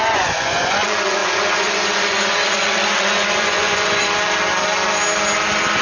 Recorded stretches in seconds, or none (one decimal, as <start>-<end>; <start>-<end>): 4.0-5.8